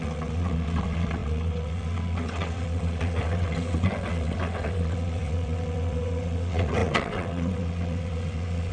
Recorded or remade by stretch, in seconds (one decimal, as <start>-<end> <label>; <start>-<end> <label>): 0.0-8.7 remade